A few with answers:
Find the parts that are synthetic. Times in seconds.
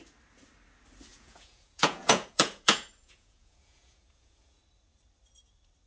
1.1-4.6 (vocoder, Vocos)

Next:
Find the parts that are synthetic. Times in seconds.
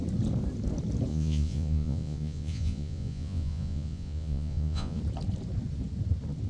1.1-5.0 (vocoder, Vocos)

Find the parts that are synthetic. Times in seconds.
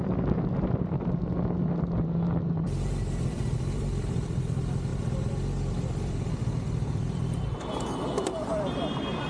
0.0-4.9 (vocoder, BigVGAN v2); 5.7-9.3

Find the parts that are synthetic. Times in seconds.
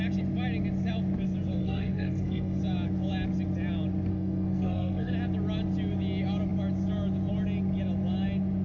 1.6-2.6 (codec, SNAC); 4.1-5.1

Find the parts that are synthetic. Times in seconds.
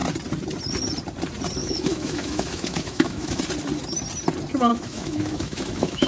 1.6-3.4 (autoencoder, DAC-VAE); 4.7-6.1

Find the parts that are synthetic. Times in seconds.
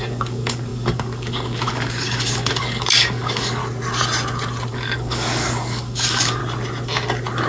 0.0-3.6 (codec, DAC); 4.7-6.4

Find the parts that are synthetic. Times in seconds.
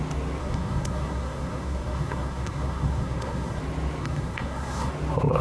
0.4-3.6 (codec, SNAC); 4.0-4.9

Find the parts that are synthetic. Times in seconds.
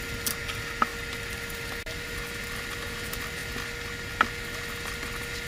none